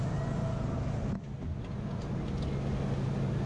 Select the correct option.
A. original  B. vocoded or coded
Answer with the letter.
A